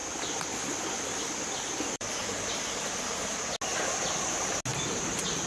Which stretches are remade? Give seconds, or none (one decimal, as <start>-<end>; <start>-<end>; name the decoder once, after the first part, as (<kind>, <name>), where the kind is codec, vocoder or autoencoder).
0.0-3.0 (vocoder, BigVGAN v2); 4.7-5.5